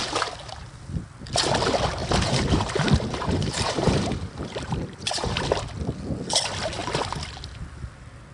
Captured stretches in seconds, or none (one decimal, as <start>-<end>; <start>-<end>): 0.0-2.0; 5.5-8.3